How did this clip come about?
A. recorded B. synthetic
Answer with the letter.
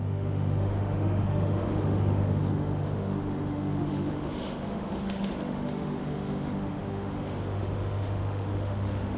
B